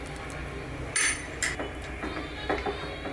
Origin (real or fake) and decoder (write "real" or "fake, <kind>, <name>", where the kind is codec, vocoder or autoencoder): real